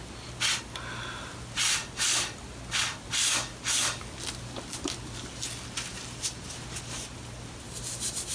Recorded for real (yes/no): yes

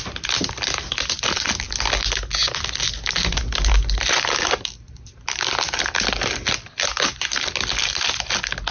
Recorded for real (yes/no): yes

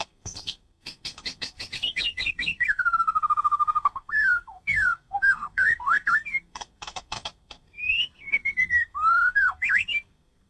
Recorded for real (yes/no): no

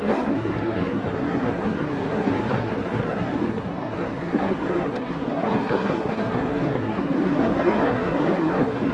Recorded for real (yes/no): no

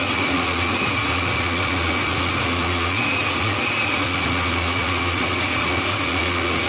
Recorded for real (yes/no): no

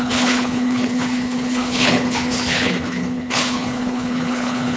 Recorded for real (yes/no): no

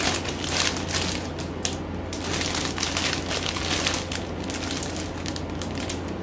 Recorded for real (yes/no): yes